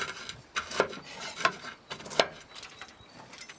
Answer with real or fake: real